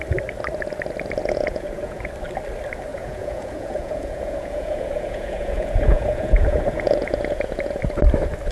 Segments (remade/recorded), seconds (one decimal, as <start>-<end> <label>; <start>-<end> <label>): 0.0-1.2 recorded; 1.2-2.1 remade; 2.1-2.9 recorded; 2.9-7.8 remade; 7.8-8.5 recorded

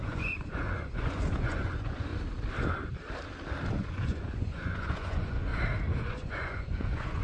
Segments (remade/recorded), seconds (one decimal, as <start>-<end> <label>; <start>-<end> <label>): 0.0-2.1 remade; 2.1-3.7 recorded; 3.7-5.5 remade; 5.5-6.0 recorded; 6.0-7.2 remade

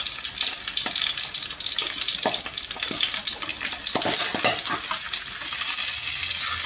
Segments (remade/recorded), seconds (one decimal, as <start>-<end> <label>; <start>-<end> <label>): 0.0-6.7 recorded

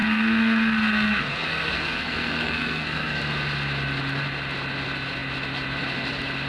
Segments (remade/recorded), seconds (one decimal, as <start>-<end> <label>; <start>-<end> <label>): 0.0-3.2 remade; 3.2-6.5 recorded